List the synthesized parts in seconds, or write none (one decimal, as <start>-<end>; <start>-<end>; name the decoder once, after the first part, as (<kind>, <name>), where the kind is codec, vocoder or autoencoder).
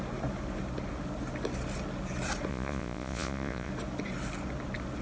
2.5-3.7 (vocoder, Vocos)